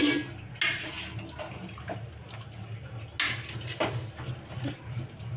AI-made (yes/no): no